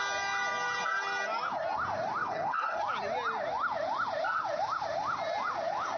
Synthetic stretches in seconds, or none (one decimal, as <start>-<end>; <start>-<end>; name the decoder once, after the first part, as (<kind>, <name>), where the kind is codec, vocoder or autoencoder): 2.2-2.8 (codec, HILCodec)